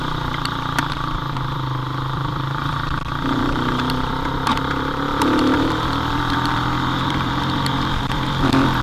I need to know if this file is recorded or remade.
remade